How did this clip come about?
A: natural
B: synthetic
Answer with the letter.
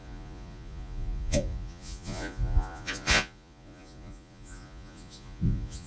B